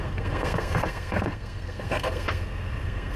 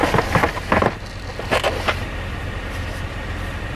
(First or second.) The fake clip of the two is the first